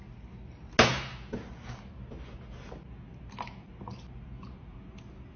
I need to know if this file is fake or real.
real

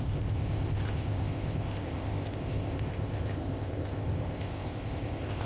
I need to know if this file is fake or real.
fake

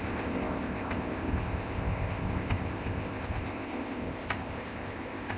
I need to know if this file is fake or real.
fake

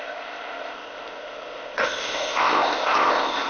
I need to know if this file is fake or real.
fake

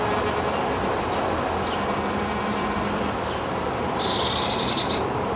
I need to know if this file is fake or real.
real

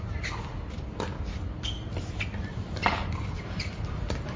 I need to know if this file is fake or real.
real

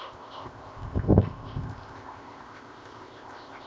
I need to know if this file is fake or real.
fake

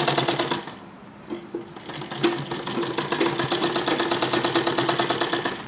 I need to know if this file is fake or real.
real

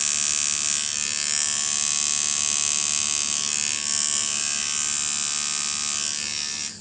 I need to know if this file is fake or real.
real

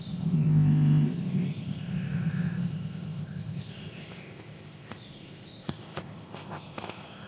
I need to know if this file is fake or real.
fake